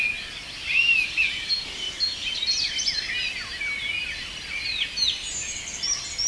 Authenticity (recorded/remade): recorded